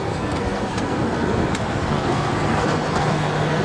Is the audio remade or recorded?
remade